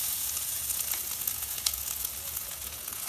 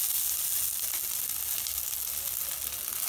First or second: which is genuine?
second